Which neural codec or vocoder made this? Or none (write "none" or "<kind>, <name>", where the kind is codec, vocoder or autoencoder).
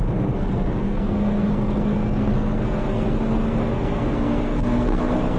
codec, SNAC